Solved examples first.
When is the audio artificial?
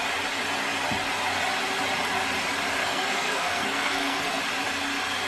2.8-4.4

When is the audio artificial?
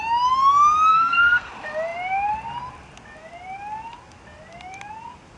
0.9-1.5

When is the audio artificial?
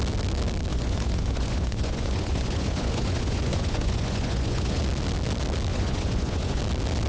0.7-4.8; 5.7-6.6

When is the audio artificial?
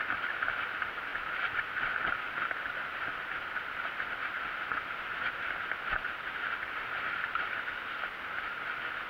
none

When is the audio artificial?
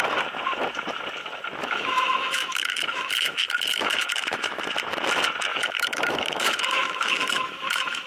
1.6-4.6; 5.5-8.1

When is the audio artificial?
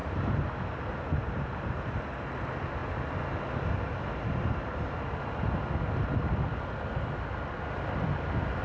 0.0-0.5; 1.2-1.9